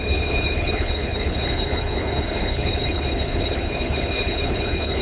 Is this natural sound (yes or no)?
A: no